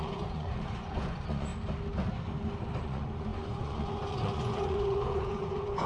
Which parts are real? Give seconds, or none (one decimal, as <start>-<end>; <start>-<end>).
1.5-2.8